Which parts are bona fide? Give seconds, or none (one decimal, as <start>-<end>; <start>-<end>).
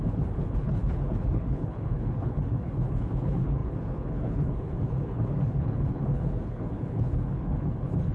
none